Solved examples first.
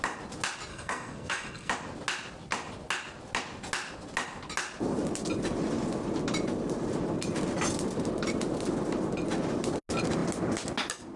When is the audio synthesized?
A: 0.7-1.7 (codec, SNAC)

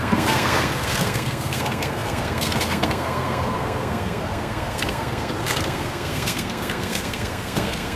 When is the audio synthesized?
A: 0.0-8.0 (codec, SNAC)

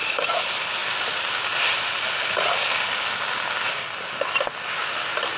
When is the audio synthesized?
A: none

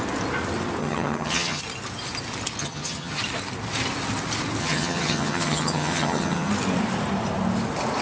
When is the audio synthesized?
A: 0.8-1.6 (vocoder, HiFi-GAN); 2.6-3.2; 4.6-6.5